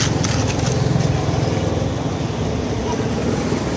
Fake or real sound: real